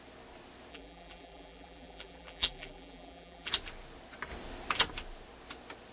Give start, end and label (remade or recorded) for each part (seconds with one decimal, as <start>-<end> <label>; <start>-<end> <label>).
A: 0.0-0.7 recorded; 0.7-3.5 remade; 3.5-5.9 recorded